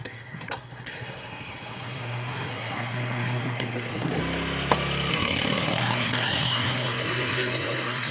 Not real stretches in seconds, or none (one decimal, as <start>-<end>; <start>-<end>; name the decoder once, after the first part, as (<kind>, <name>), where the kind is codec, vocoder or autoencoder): 0.0-4.2 (codec, SNAC); 5.1-8.1